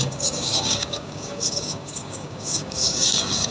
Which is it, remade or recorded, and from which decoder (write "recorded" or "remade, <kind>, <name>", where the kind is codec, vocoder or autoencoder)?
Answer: remade, codec, DAC